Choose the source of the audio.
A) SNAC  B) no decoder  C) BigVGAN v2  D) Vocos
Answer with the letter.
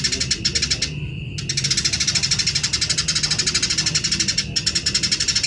B